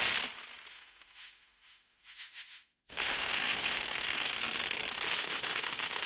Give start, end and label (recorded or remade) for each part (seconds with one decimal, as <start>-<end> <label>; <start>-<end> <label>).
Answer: 0.0-0.7 recorded; 0.7-4.4 remade; 4.4-5.2 recorded; 5.2-6.1 remade